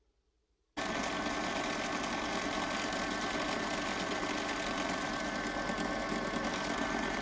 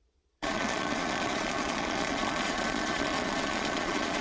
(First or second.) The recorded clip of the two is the first